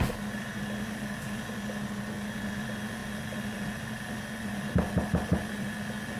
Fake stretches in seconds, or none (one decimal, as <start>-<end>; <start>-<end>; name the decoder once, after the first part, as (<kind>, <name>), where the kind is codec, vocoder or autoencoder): 3.0-3.8 (vocoder, BigVGAN v2)